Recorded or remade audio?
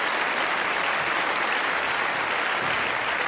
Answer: recorded